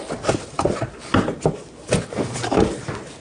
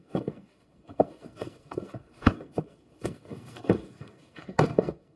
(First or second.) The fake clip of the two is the second